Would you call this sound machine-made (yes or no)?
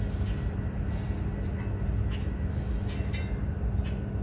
no